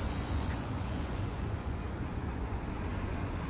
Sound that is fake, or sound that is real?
fake